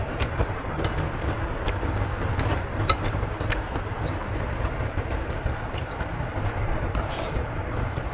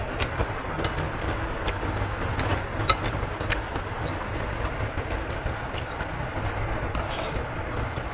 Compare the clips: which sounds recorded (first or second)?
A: second